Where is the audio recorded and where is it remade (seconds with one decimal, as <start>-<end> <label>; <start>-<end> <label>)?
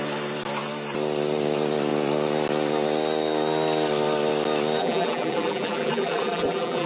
0.0-4.8 recorded; 4.8-6.9 remade